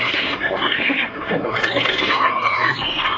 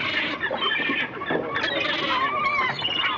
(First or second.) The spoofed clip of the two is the first